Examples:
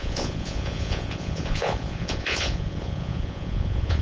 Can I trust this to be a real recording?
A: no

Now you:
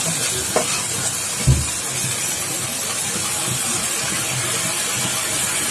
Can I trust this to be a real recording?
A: yes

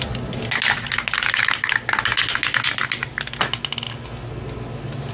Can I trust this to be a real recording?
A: yes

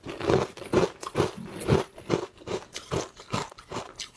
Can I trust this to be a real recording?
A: yes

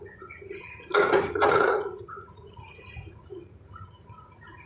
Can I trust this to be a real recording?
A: no